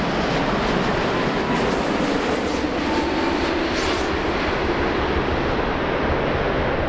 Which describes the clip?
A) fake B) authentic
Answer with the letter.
B